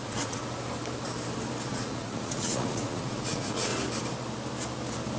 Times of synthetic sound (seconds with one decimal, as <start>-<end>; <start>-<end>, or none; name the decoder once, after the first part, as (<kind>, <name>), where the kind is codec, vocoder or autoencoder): 0.0-0.4 (vocoder, Vocos); 1.7-3.7